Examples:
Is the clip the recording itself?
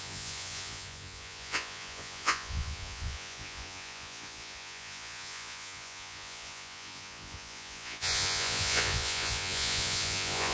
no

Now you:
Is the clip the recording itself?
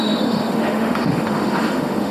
no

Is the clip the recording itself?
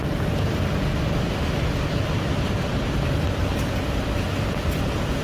no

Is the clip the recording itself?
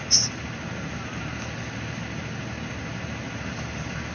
yes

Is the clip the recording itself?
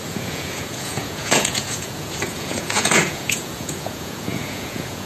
no